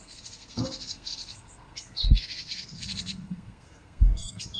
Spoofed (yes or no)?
yes